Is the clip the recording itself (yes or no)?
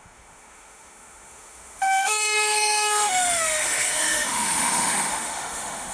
no